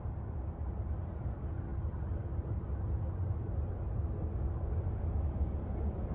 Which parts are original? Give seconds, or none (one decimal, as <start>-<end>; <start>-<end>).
0.0-6.1